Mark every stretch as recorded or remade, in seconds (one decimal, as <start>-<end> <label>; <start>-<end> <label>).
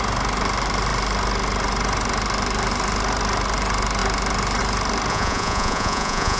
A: 0.0-5.1 recorded; 5.1-6.4 remade